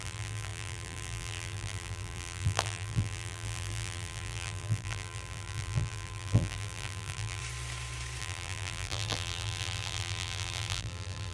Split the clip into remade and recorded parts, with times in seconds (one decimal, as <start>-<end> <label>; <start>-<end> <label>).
0.0-7.4 remade; 7.4-8.2 recorded; 8.2-11.3 remade